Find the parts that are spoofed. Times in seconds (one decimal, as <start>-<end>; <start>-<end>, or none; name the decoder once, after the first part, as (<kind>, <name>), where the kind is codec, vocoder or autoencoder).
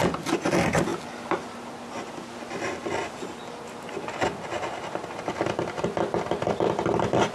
none